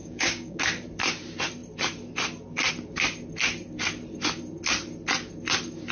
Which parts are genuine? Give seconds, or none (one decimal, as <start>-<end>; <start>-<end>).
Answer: 0.6-5.9